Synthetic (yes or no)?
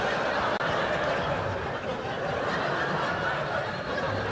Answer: no